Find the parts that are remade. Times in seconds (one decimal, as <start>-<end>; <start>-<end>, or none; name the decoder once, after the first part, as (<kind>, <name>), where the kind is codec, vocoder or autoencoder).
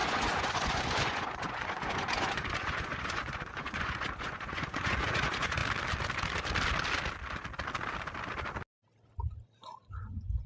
0.0-5.6 (vocoder, Vocos); 9.6-10.5